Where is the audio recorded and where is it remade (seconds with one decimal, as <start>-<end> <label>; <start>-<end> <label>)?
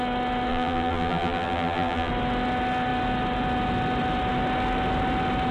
0.0-0.5 recorded; 0.5-2.1 remade; 2.1-5.5 recorded